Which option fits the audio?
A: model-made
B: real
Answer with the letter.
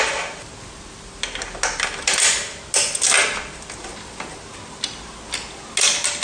B